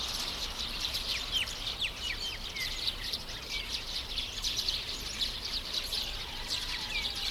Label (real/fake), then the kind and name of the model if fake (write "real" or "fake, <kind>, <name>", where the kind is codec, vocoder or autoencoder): fake, vocoder, BigVGAN v2